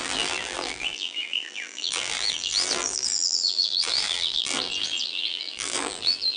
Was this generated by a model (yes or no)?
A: yes